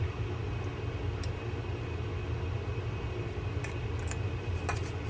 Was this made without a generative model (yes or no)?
yes